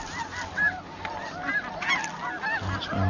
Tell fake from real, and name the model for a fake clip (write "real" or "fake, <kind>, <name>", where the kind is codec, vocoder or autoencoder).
real